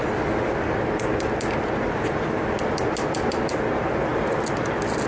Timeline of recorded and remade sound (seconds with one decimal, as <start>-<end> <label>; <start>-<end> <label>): 0.0-5.1 recorded